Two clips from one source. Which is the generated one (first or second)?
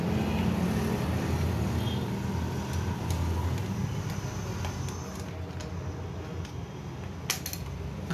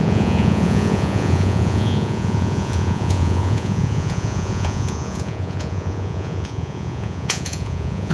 second